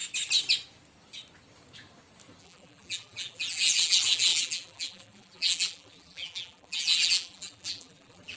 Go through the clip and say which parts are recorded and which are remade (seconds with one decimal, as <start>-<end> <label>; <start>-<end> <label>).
0.0-2.4 recorded; 2.4-8.4 remade